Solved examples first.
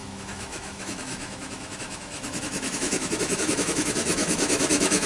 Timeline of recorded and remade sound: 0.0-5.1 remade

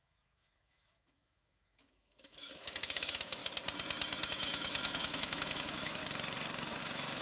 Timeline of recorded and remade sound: 0.0-3.4 remade; 3.4-4.3 recorded; 4.3-6.0 remade; 6.0-6.8 recorded; 6.8-7.2 remade

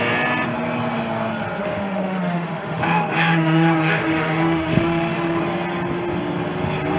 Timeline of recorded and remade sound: 0.0-1.6 recorded; 1.6-5.4 remade; 5.4-7.0 recorded

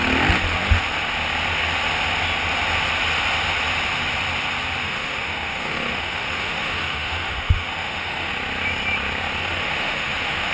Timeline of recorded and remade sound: 0.0-4.8 recorded; 4.8-8.3 remade; 8.3-9.4 recorded; 9.4-10.5 remade